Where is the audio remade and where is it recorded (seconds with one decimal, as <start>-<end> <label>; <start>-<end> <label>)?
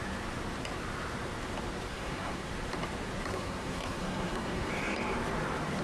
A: 0.0-1.9 recorded; 1.9-2.5 remade; 2.5-3.3 recorded; 3.3-4.7 remade; 4.7-5.8 recorded